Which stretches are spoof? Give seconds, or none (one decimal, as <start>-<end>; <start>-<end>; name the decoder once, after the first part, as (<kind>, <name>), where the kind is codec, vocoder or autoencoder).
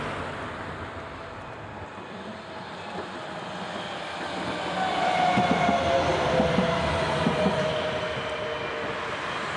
none